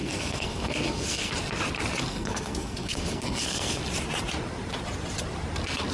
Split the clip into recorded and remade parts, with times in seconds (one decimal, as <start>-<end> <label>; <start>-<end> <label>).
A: 0.0-1.3 remade; 1.3-2.1 recorded; 2.1-3.8 remade; 3.8-5.9 recorded